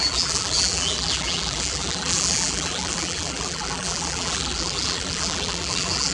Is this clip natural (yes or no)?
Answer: no